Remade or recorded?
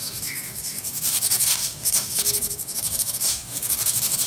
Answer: remade